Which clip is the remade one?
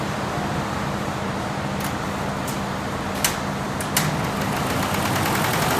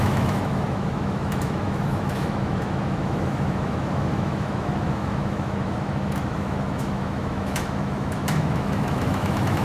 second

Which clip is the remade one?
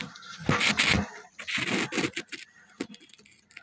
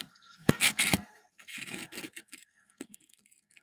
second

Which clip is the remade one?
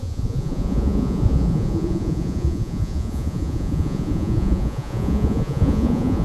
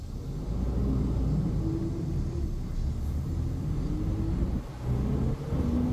first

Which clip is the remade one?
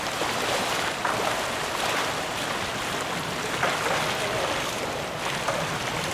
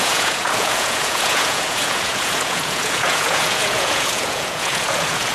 second